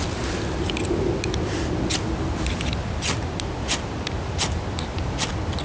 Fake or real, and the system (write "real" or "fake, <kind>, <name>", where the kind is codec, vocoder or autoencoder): real